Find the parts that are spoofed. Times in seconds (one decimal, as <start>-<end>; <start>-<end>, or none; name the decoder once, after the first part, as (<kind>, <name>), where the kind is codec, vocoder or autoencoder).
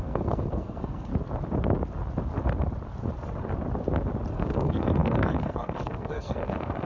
0.0-1.1 (codec, SNAC); 4.3-6.8